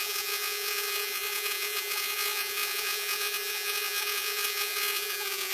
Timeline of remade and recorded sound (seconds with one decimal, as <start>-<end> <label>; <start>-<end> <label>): 0.0-5.5 remade